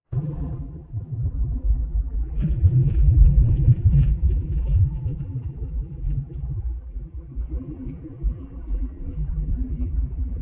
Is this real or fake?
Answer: fake